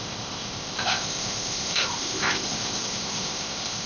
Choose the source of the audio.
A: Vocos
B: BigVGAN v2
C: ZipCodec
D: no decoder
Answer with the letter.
C